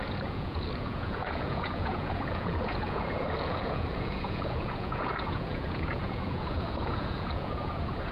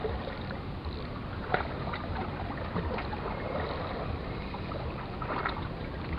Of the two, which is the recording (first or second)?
second